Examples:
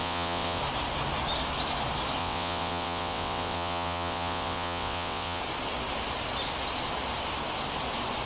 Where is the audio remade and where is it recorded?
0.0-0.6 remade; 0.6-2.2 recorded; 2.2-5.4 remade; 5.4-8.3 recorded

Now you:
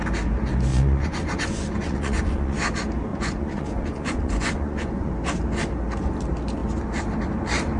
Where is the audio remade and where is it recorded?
0.0-0.7 recorded; 0.7-2.6 remade; 2.6-3.1 recorded; 3.1-5.1 remade; 5.1-7.8 recorded

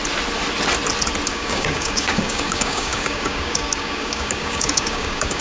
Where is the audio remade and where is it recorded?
0.0-1.3 recorded; 1.3-5.4 remade